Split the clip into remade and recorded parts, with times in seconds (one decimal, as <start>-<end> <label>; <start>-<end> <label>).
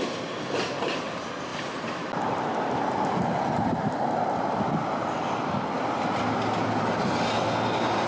0.0-8.1 recorded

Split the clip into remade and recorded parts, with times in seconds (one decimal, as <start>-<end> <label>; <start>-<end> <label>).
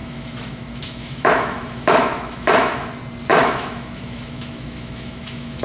0.0-2.9 remade; 2.9-3.3 recorded; 3.3-5.6 remade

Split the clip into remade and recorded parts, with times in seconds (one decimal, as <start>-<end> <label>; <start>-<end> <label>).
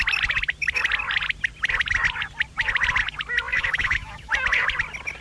0.0-3.5 recorded; 3.5-4.3 remade; 4.3-5.2 recorded